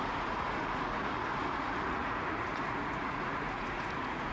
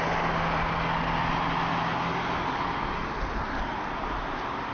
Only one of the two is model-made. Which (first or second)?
first